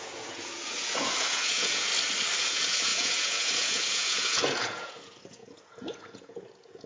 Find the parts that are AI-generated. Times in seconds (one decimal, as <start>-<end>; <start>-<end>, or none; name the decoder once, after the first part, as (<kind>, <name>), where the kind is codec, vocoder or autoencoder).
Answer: 0.0-1.9 (vocoder, Vocos); 2.4-6.9